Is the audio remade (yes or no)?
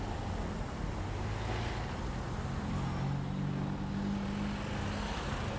no